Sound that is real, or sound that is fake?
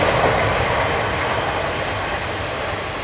real